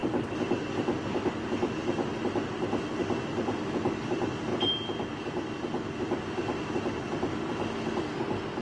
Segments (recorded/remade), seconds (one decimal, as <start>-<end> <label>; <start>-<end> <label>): 0.0-3.3 recorded; 3.3-4.1 remade; 4.1-8.6 recorded